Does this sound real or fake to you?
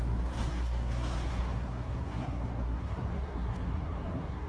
fake